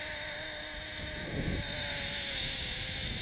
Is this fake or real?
real